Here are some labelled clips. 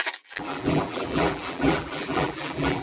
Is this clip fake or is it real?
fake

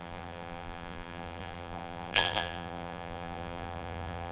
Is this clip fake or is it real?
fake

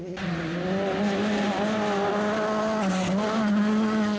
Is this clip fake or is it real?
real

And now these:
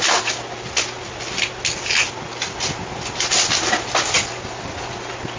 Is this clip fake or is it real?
real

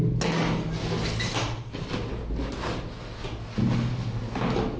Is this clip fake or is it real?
real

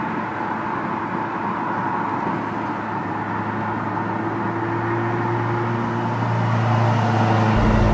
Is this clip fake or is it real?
real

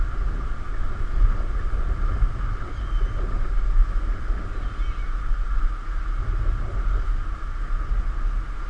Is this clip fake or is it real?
real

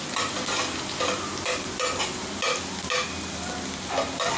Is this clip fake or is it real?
real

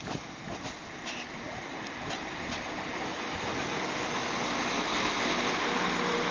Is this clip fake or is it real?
real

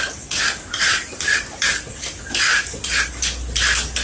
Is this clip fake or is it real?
real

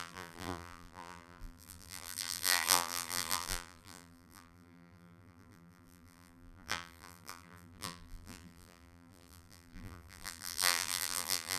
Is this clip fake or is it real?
fake